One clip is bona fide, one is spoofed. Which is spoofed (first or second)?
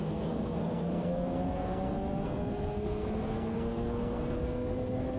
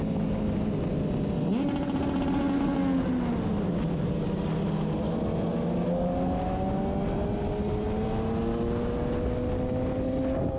first